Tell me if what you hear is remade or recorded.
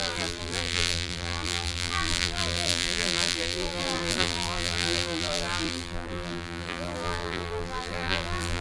remade